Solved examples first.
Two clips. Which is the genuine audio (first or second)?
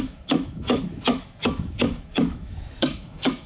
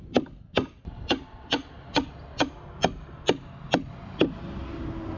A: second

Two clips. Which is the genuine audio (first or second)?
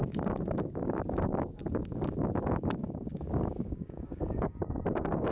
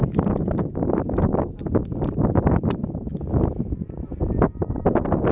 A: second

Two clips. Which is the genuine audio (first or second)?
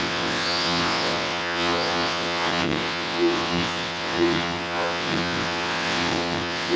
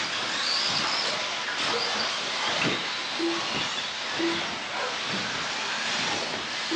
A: second